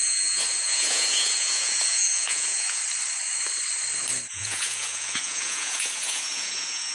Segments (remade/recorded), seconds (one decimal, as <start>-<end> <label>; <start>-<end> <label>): 0.0-2.8 remade; 2.8-4.3 recorded; 4.3-6.9 remade